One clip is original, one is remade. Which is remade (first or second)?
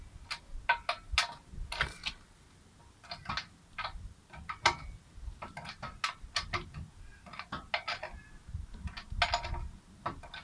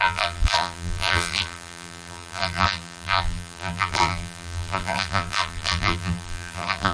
second